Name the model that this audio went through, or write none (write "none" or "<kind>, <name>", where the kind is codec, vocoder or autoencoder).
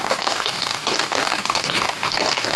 codec, DAC